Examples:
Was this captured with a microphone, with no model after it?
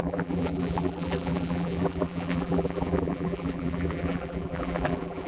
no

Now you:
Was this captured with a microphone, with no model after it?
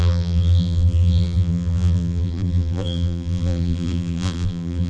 no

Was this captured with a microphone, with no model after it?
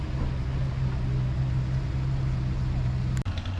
yes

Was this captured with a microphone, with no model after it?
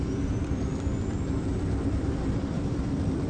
no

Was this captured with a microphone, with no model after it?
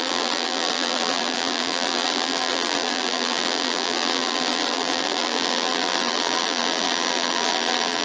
no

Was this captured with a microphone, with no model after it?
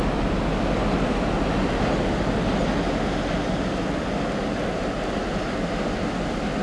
yes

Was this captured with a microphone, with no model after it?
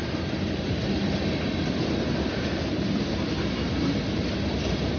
yes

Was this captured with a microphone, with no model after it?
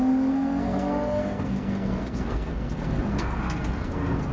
no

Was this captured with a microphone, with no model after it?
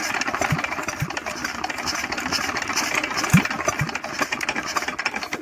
no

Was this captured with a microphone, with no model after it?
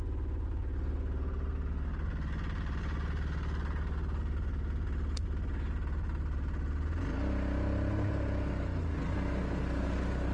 yes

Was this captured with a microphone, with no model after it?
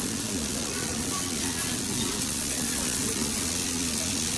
no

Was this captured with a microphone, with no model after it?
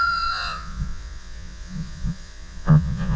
no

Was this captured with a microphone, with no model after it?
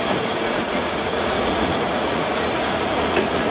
no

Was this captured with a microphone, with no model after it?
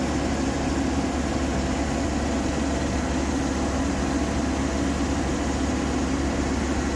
yes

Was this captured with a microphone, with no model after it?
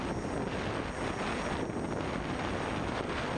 yes